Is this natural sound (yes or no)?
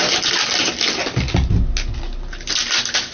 yes